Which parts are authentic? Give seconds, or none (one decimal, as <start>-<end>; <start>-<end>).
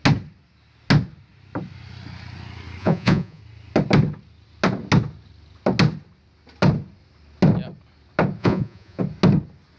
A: 0.0-2.8; 3.4-8.4; 9.0-9.8